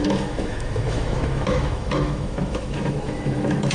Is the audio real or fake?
fake